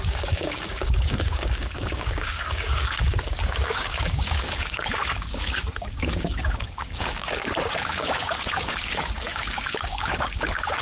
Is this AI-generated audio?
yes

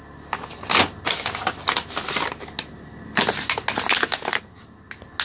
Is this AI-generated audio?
no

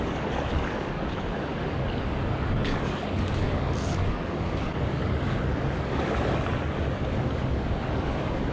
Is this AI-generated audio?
yes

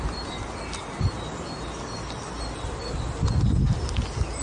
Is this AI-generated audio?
no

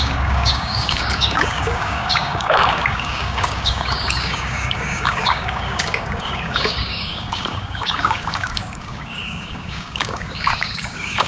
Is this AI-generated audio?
yes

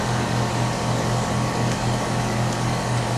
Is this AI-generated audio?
yes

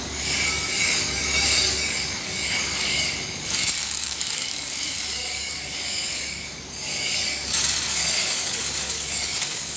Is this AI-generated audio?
yes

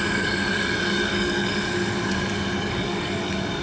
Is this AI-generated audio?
yes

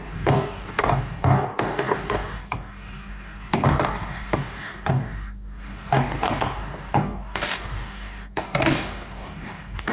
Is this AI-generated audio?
yes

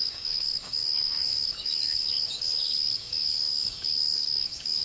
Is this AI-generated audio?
yes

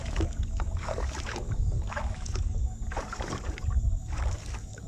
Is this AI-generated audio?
yes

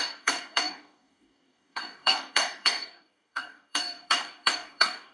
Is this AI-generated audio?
yes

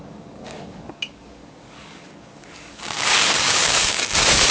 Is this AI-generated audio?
yes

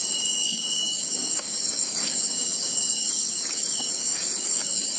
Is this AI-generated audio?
yes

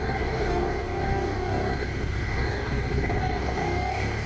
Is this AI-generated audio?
yes